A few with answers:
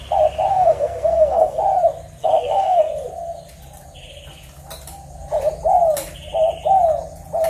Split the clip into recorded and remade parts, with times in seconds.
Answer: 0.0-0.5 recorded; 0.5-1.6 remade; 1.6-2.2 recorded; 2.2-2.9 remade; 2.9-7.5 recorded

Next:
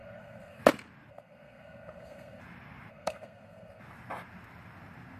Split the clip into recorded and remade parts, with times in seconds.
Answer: 0.0-0.6 remade; 0.6-1.1 recorded; 1.1-2.4 remade; 2.4-2.9 recorded; 2.9-3.8 remade; 3.8-5.2 recorded

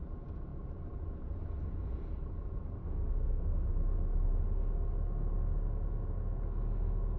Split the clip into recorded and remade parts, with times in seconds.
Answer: 0.0-2.8 recorded; 2.8-3.7 remade; 3.7-7.2 recorded